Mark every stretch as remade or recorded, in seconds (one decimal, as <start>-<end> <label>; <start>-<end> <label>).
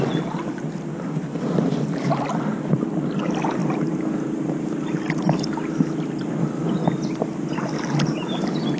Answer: 0.0-8.8 recorded